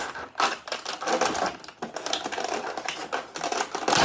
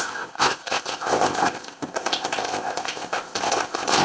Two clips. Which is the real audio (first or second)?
first